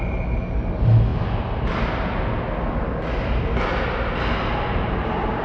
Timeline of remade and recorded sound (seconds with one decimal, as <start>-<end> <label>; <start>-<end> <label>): 0.0-5.4 recorded